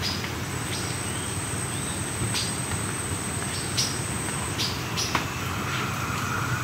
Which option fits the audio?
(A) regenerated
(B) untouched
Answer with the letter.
B